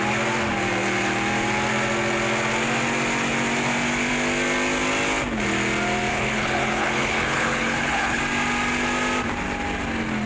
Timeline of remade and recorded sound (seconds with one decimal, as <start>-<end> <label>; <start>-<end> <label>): 0.0-6.1 recorded; 6.1-8.2 remade; 8.2-10.3 recorded